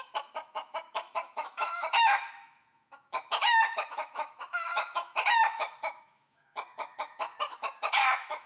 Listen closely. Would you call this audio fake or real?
fake